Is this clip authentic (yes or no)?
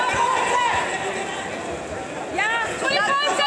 yes